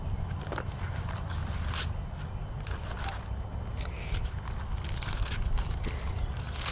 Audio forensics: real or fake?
real